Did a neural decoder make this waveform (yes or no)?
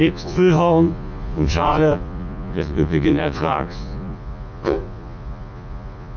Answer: yes